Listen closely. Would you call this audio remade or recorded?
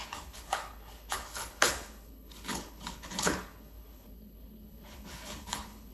remade